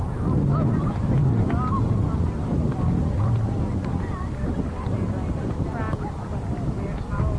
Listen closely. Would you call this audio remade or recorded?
recorded